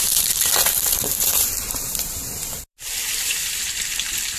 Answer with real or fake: fake